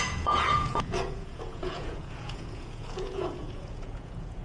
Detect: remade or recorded remade